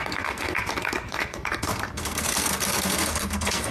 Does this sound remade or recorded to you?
remade